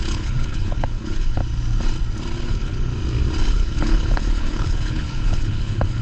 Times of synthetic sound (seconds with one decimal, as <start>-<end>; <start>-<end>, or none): 0.0-1.4; 2.4-2.9; 3.5-6.0